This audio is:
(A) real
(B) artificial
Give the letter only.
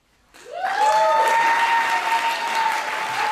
A